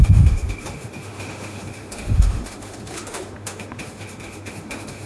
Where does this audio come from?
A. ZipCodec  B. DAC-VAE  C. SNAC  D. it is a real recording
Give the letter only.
B